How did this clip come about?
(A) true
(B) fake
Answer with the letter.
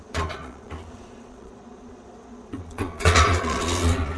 B